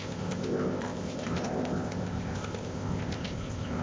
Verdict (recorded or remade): remade